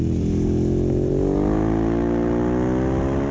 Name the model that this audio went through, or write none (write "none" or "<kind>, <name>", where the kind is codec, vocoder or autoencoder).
none